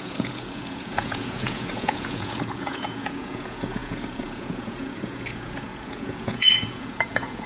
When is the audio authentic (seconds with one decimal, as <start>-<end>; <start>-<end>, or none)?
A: none